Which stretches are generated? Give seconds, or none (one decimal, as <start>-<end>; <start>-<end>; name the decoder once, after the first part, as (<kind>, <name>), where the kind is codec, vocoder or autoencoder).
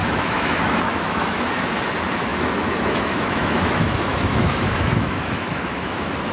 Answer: 0.0-1.5 (autoencoder, DAC-VAE); 2.3-6.3